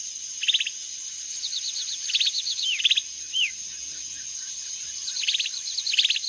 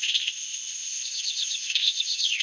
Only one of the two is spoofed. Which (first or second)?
second